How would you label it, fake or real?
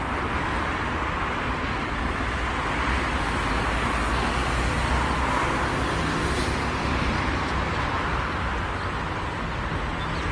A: real